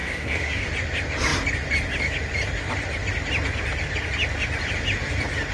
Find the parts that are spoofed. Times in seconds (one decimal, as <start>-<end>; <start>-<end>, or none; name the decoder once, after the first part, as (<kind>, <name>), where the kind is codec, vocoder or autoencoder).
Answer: 0.0-0.7 (codec, SNAC)